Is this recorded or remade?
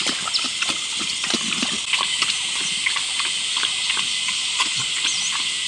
recorded